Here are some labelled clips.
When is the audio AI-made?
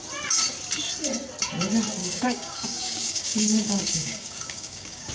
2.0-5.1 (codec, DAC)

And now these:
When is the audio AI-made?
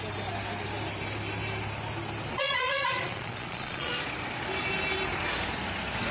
2.3-3.9 (vocoder, Vocos)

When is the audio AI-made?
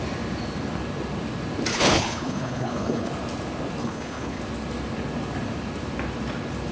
1.7-3.1 (codec, HILCodec); 3.8-4.4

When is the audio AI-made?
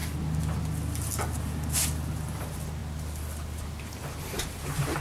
2.4-2.8 (vocoder, BigVGAN v2); 3.8-5.0